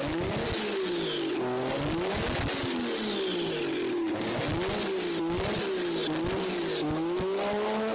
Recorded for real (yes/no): yes